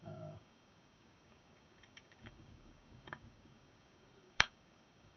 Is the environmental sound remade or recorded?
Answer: remade